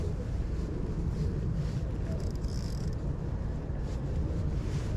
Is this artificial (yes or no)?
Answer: no